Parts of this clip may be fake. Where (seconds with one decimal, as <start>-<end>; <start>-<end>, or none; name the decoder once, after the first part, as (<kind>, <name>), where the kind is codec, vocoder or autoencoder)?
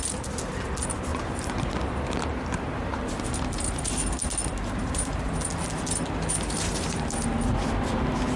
1.1-3.0 (vocoder, BigVGAN v2); 4.5-5.3